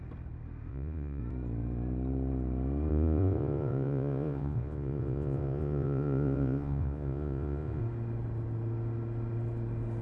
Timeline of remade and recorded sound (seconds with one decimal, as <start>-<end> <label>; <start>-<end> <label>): 0.0-0.7 recorded; 0.7-1.2 remade; 1.2-2.9 recorded; 2.9-7.8 remade; 7.8-10.0 recorded